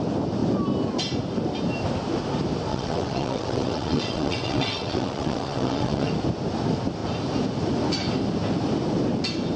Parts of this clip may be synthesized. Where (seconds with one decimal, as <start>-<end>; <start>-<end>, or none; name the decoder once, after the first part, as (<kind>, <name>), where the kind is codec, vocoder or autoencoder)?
2.7-6.1 (vocoder, WaveNeXt)